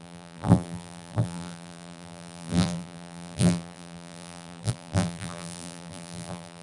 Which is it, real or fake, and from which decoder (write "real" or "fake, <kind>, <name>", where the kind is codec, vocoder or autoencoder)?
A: fake, vocoder, BigVGAN v2